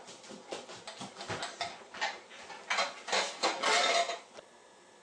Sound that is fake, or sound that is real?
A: real